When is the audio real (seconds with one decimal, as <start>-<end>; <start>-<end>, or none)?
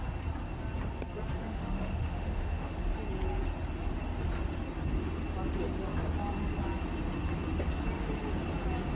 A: 0.0-1.4; 2.8-8.9